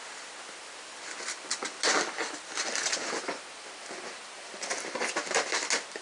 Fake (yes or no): no